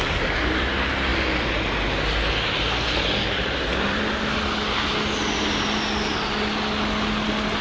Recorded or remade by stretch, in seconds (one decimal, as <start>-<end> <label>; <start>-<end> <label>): 0.0-7.6 recorded